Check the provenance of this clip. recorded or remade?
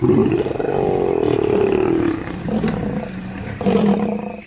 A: recorded